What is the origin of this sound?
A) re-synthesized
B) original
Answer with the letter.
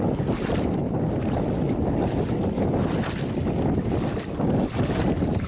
B